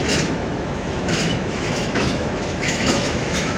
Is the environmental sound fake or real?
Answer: fake